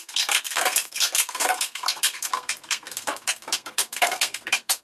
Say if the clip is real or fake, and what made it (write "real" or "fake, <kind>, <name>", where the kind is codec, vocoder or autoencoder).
fake, codec, SNAC